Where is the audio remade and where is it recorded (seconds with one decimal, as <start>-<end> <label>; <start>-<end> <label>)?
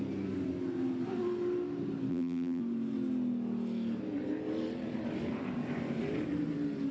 0.0-2.1 recorded; 2.1-2.6 remade; 2.6-6.9 recorded